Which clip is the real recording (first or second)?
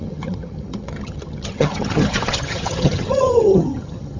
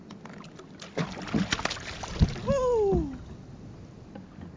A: second